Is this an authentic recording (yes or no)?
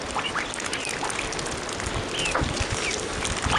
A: yes